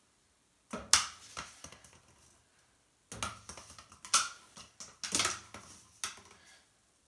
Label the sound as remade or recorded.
recorded